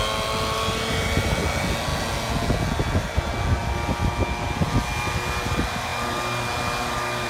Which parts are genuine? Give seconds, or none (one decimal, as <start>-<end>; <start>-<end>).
0.0-7.3